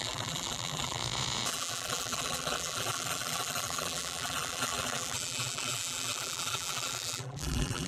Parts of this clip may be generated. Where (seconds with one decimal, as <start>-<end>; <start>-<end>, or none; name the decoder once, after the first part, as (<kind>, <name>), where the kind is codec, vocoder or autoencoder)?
0.0-1.0 (vocoder, BigVGAN v2); 1.5-7.9